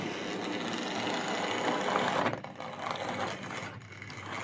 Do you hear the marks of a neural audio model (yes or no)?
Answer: no